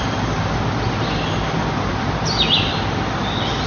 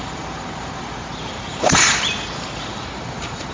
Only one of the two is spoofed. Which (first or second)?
second